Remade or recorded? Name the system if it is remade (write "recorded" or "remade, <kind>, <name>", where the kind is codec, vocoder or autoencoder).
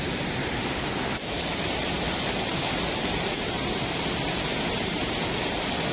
remade, vocoder, BigVGAN v2